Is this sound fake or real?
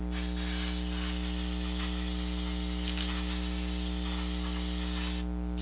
real